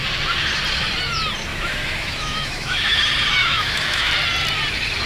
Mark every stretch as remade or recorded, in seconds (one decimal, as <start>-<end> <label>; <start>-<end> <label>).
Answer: 0.0-1.5 recorded; 1.5-3.0 remade; 3.0-3.4 recorded; 3.4-4.1 remade; 4.1-5.1 recorded